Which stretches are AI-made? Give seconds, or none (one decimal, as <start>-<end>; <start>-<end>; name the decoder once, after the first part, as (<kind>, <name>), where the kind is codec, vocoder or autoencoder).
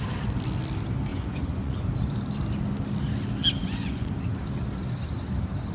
1.1-1.8 (vocoder, Vocos); 3.6-4.1